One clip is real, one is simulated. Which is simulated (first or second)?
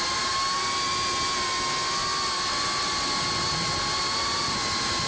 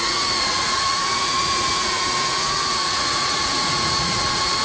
second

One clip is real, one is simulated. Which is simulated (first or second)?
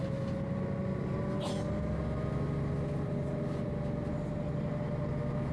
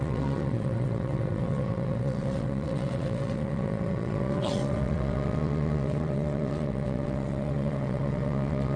second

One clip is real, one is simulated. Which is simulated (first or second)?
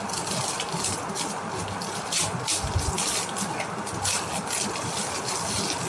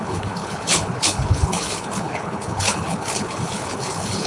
second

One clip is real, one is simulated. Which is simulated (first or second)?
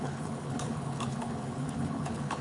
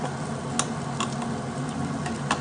first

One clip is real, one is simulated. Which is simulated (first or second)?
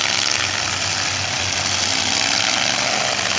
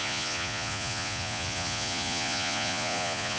second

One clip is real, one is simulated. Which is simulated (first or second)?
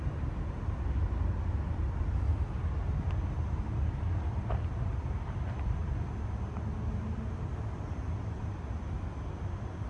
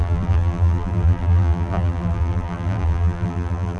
second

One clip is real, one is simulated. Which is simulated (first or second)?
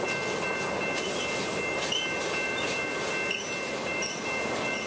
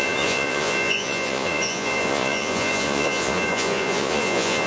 second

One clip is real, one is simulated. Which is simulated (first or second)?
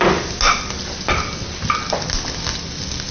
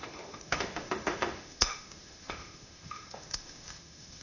second